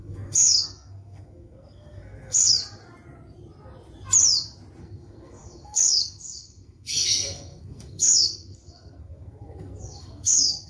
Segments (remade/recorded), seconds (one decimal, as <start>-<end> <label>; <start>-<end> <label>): 0.0-2.5 remade; 2.5-4.8 recorded; 4.8-10.7 remade